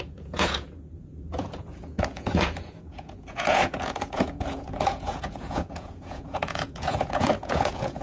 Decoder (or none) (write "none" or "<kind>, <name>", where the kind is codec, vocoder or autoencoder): vocoder, Vocos